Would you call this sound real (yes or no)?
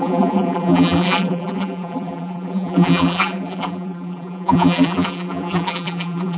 no